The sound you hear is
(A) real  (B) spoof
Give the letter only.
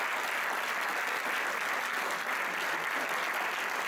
A